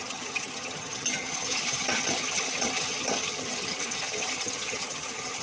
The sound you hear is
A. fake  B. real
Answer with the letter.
A